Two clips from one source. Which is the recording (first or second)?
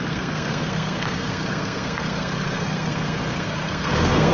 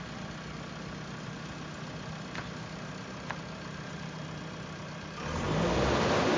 second